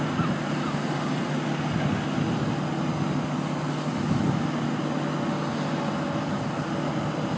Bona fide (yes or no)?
yes